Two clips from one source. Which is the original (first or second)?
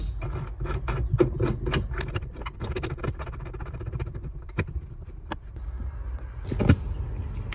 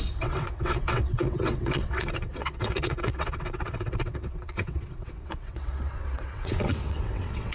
first